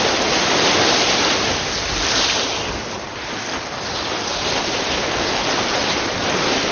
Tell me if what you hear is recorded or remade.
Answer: recorded